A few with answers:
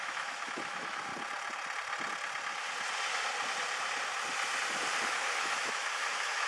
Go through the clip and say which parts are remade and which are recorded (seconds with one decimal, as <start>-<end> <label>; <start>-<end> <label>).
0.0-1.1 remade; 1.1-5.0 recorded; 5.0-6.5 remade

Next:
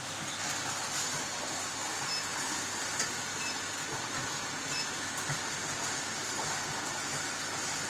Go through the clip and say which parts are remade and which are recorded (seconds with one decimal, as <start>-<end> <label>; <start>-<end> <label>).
0.0-7.9 recorded

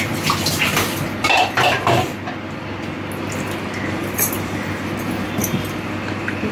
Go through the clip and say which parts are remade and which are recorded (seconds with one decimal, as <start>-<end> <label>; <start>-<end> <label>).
0.0-6.5 recorded

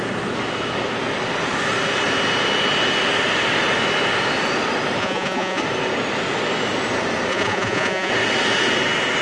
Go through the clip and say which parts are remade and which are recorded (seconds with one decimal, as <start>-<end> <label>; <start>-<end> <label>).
0.0-5.0 recorded; 5.0-5.6 remade; 5.6-7.3 recorded; 7.3-8.1 remade; 8.1-9.2 recorded

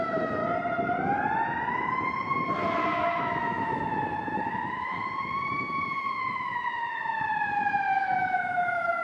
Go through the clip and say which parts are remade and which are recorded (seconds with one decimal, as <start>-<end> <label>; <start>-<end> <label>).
0.0-0.4 remade; 0.4-1.7 recorded; 1.7-9.0 remade

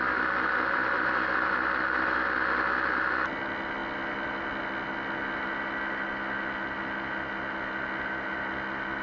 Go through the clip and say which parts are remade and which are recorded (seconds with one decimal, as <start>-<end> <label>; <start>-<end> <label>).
0.0-9.0 recorded

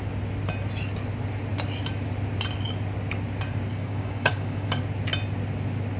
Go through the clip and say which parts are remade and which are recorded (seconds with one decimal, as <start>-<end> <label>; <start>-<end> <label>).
0.0-3.7 recorded; 3.7-4.8 remade; 4.8-6.0 recorded